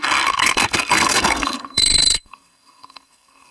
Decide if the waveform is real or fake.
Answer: fake